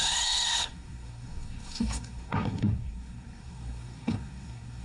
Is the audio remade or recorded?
remade